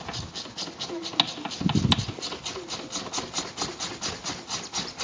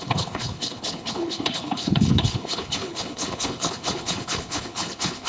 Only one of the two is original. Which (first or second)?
first